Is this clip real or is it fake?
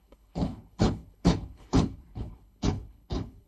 fake